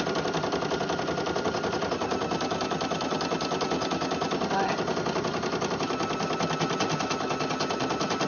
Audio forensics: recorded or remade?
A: recorded